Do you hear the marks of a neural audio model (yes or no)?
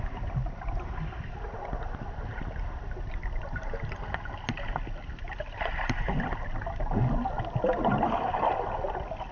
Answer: no